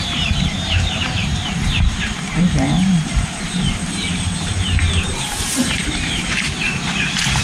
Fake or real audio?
fake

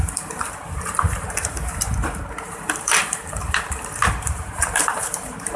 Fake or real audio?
fake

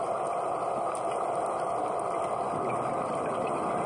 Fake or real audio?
real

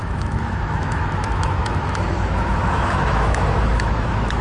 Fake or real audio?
fake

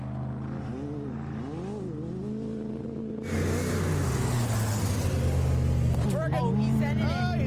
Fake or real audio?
real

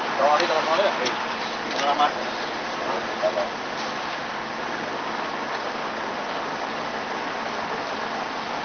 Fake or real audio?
real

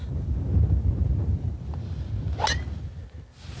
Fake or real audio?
real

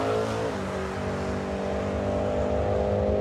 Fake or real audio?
real